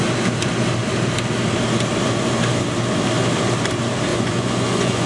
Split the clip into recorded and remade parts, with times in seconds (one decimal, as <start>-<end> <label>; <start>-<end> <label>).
0.0-4.1 recorded; 4.1-5.1 remade